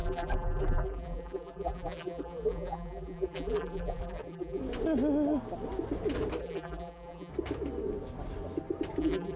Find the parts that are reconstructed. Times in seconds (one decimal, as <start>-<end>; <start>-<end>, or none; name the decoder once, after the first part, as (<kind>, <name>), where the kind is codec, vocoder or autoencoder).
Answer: 0.0-4.6 (vocoder, BigVGAN v2); 6.4-7.3; 9.0-9.4